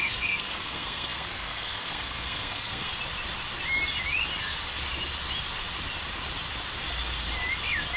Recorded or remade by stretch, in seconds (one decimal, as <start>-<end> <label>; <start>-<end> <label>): 0.0-2.9 remade; 2.9-8.0 recorded